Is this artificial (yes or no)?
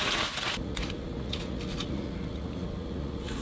yes